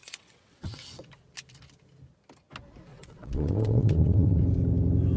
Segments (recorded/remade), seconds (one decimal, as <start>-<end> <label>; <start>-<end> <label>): 0.0-1.0 remade; 1.0-2.9 recorded; 2.9-4.4 remade; 4.4-5.2 recorded